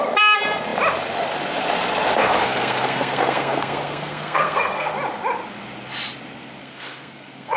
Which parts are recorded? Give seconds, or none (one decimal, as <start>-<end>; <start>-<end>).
0.0-2.1; 4.9-6.6